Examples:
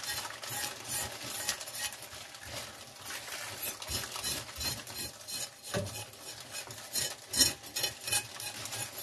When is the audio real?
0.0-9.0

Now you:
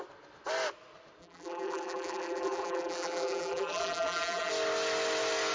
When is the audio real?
0.0-1.2; 4.5-5.5

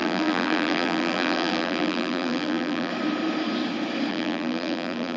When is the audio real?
2.9-4.1

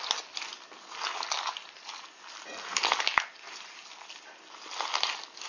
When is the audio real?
0.0-5.5

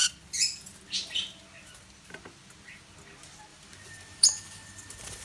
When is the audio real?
0.0-3.5

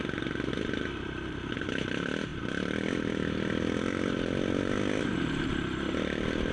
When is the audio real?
0.0-2.3; 5.0-6.5